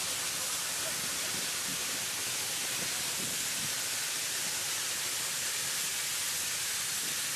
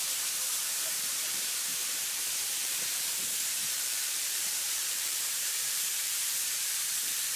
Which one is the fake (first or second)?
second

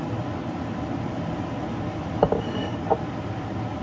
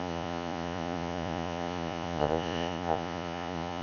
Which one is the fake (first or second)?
second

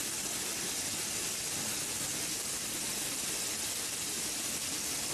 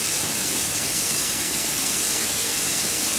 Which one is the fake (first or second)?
second